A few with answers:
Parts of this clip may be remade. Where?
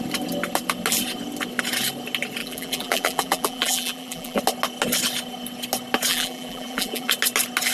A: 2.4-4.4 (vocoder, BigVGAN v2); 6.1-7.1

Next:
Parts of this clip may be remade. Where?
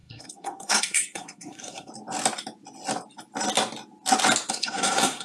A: 0.0-1.9 (codec, SNAC); 4.5-5.2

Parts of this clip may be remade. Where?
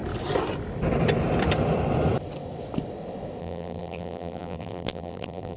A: 3.4-5.6 (vocoder, BigVGAN v2)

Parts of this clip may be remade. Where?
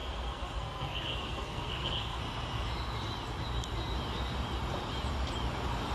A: 0.0-2.2 (codec, SNAC)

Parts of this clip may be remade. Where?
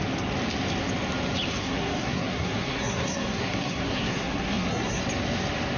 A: 1.5-5.0 (codec, SNAC)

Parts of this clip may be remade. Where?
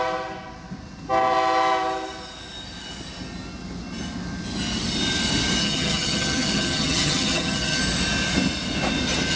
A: 5.6-7.8 (vocoder, HiFi-GAN)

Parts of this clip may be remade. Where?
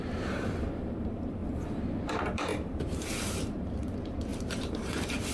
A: 0.0-1.4 (vocoder, BigVGAN v2); 2.1-5.3